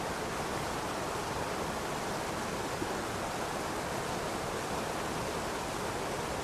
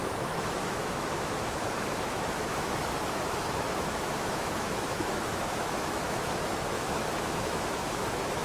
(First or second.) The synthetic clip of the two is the second